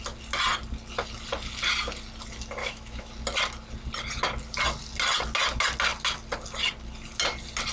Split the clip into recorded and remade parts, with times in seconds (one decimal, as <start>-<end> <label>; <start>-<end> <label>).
0.0-2.6 recorded; 2.6-3.1 remade; 3.1-7.7 recorded